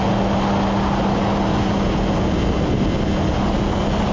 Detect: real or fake real